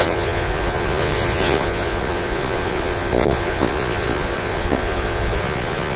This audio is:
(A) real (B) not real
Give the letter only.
B